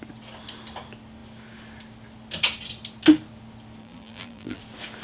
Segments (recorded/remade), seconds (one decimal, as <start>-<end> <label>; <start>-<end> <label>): 0.0-3.8 recorded; 3.8-4.6 remade; 4.6-5.0 recorded